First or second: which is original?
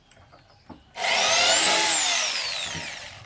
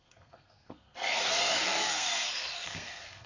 first